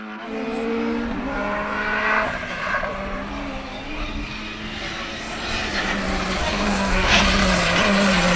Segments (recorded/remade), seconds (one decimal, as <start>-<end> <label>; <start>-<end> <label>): 0.0-6.4 recorded; 6.4-7.2 remade; 7.2-8.4 recorded